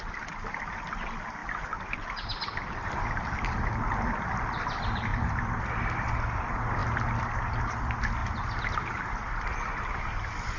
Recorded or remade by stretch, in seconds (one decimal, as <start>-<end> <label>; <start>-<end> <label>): 0.0-10.6 recorded